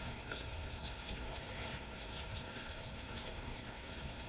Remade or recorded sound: remade